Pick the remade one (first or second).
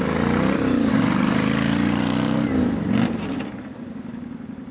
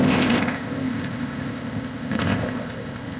second